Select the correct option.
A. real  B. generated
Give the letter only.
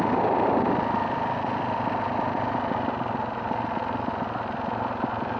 A